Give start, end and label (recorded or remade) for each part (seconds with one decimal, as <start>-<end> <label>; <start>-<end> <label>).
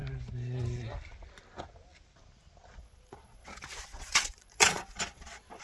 0.0-2.8 recorded; 2.8-5.6 remade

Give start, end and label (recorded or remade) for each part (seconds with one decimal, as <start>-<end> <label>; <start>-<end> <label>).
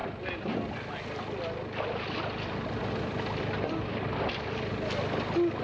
0.0-5.6 recorded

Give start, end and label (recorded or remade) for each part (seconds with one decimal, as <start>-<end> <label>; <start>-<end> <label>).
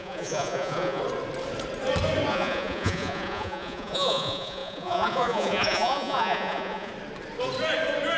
0.0-1.0 remade; 1.0-2.3 recorded; 2.3-6.9 remade; 6.9-8.2 recorded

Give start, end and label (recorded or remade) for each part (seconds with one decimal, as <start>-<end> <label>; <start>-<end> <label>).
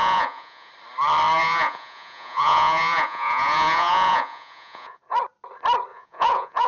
0.0-0.7 remade; 0.7-1.4 recorded; 1.4-5.0 remade; 5.0-5.9 recorded; 5.9-6.7 remade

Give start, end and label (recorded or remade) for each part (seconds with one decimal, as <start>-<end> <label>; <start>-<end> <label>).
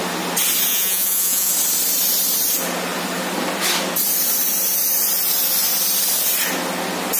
0.0-0.7 recorded; 0.7-1.5 remade; 1.5-7.2 recorded